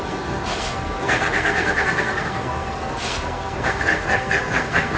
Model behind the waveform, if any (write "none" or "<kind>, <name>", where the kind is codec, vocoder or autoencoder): codec, SNAC